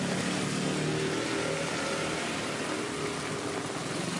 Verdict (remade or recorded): recorded